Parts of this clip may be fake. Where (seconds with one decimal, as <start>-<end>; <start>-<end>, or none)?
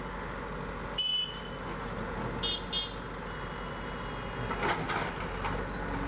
none